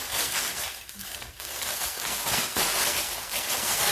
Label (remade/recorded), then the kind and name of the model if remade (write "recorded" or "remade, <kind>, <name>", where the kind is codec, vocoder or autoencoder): remade, codec, SNAC